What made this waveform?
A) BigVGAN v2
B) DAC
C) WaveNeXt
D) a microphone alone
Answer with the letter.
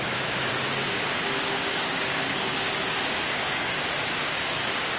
B